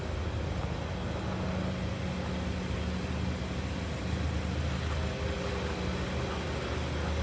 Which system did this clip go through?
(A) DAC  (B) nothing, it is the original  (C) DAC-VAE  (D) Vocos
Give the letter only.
B